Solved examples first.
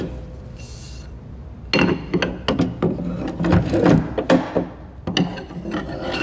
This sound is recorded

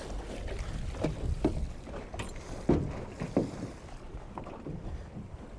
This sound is recorded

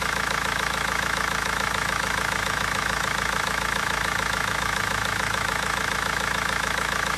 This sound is remade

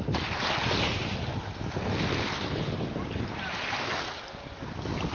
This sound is recorded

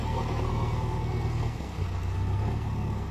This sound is remade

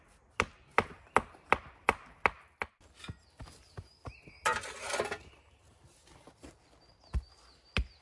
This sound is recorded